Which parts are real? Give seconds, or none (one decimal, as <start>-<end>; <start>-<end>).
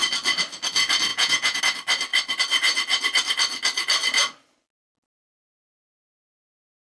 0.0-1.1; 1.6-6.8